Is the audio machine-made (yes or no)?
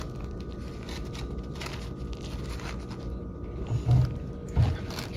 no